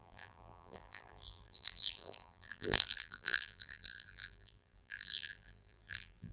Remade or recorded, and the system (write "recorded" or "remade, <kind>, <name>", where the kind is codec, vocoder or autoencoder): remade, vocoder, BigVGAN v2